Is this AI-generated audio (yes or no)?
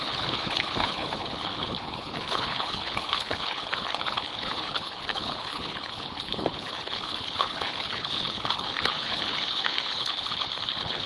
yes